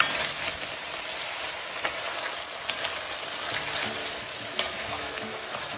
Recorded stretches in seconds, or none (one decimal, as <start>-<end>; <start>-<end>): 0.0-4.0